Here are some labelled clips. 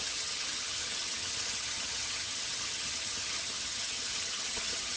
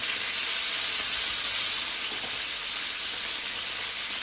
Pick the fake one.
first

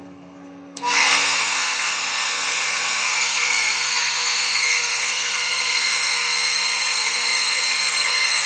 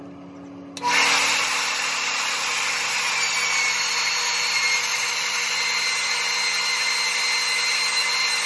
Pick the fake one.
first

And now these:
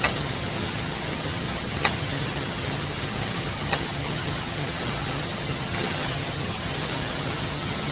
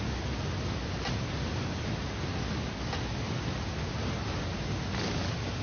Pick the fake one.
first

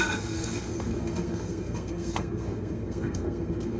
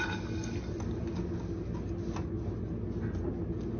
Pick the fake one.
first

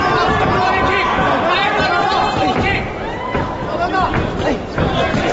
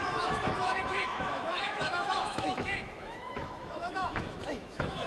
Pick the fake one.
second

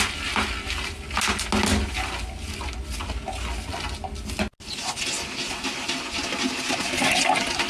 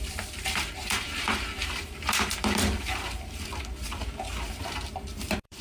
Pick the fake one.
second